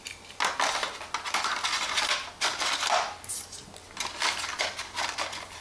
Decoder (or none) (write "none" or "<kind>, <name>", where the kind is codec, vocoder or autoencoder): none